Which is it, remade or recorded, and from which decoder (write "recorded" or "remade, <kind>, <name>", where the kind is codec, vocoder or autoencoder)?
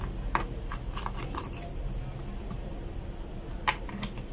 recorded